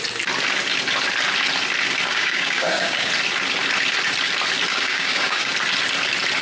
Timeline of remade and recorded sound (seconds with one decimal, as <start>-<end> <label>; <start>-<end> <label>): 0.0-2.1 recorded; 2.1-3.1 remade; 3.1-4.7 recorded; 4.7-5.5 remade; 5.5-6.4 recorded